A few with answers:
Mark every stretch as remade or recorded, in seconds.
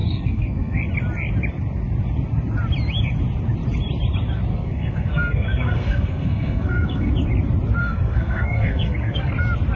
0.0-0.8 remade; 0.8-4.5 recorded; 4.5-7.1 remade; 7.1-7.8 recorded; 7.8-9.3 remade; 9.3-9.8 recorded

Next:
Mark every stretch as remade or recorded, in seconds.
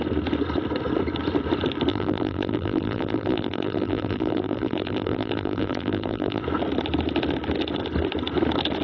0.0-1.9 recorded; 1.9-6.4 remade; 6.4-8.8 recorded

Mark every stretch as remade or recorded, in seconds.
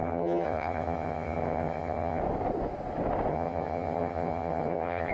0.0-2.2 remade; 2.2-3.3 recorded; 3.3-5.1 remade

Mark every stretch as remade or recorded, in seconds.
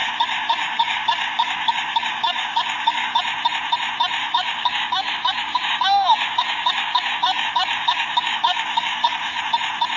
0.0-3.2 remade; 3.2-4.2 recorded; 4.2-9.4 remade; 9.4-10.0 recorded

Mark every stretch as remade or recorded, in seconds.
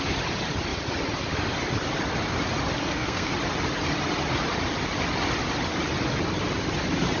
0.0-2.8 recorded; 2.8-3.3 remade; 3.3-7.2 recorded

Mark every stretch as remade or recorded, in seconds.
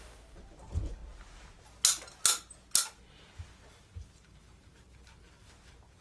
0.0-1.0 remade; 1.0-3.8 recorded; 3.8-6.0 remade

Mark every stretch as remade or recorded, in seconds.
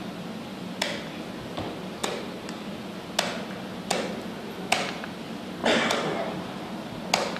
0.0-5.6 recorded; 5.6-6.6 remade; 6.6-7.4 recorded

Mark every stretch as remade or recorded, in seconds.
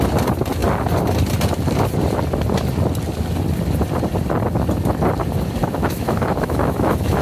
0.0-5.6 recorded; 5.6-7.2 remade